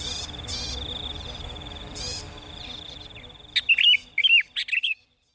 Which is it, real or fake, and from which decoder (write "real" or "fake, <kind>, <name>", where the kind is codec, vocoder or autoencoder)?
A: real